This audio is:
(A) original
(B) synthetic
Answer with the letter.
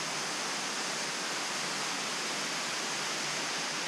A